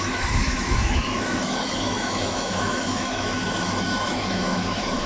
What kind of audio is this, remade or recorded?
remade